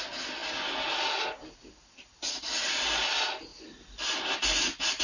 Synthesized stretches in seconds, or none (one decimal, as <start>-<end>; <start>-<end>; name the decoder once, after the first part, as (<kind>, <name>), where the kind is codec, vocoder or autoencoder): none